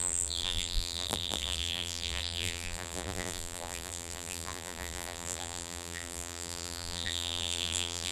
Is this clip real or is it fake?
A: fake